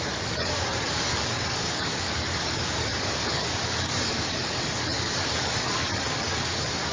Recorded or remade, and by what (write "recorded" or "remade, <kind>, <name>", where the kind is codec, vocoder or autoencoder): remade, codec, DAC